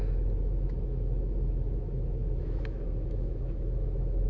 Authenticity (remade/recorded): remade